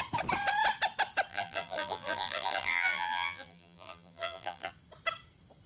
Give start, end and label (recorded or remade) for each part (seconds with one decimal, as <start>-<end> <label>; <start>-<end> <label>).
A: 0.0-1.3 recorded; 1.3-4.7 remade; 4.7-5.7 recorded